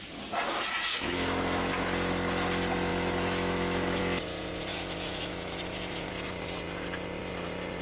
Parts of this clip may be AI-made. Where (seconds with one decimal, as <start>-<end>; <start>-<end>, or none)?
0.9-1.7; 2.9-4.0; 4.7-6.1